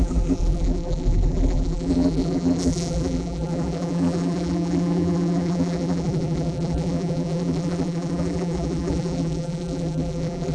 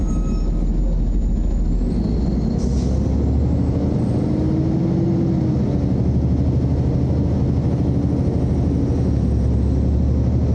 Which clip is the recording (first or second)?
second